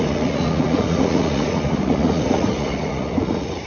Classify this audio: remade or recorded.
remade